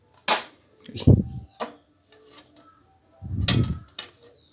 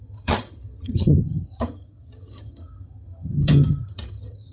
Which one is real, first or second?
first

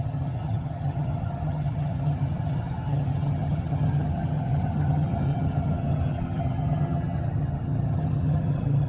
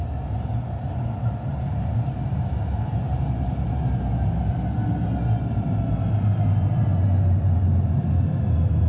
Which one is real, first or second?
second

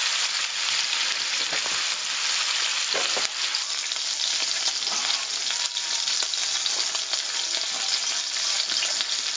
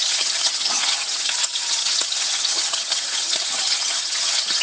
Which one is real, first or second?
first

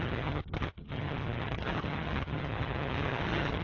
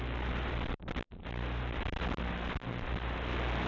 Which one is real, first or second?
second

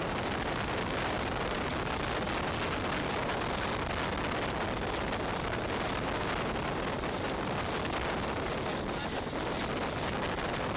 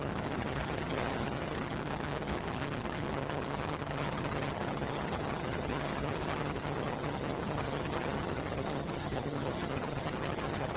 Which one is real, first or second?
first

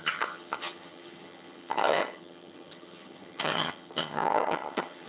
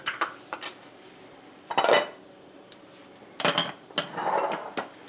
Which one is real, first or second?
second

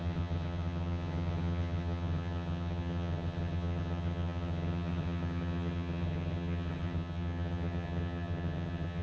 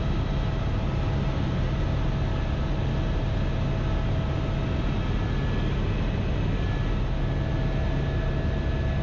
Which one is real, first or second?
second